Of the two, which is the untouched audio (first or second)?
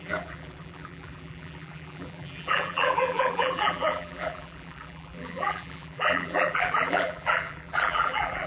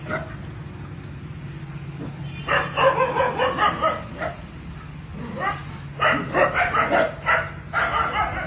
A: second